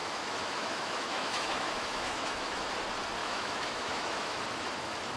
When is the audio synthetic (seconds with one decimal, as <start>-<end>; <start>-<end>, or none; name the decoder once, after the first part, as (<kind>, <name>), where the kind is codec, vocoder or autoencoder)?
0.0-2.7 (autoencoder, DAC-VAE); 3.2-4.4